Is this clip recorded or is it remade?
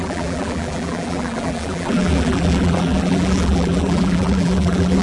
remade